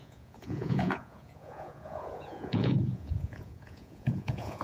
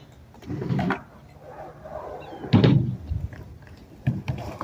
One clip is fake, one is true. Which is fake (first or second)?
first